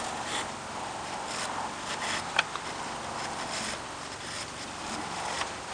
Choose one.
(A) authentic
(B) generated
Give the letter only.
B